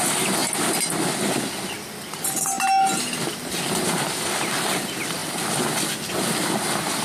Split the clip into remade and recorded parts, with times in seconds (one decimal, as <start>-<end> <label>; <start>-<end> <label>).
0.0-7.0 recorded